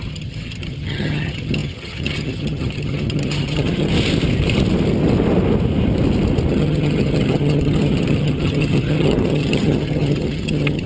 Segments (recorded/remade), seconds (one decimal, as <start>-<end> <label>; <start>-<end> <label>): 0.0-3.9 remade; 3.9-6.5 recorded; 6.5-10.9 remade